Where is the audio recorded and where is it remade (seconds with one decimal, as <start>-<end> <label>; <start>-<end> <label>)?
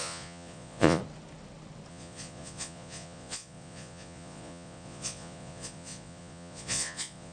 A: 0.0-1.0 remade; 1.0-1.9 recorded; 1.9-7.3 remade